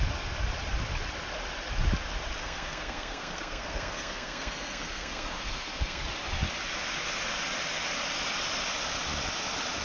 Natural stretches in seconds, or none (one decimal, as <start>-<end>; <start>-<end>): 0.0-2.4; 6.0-9.8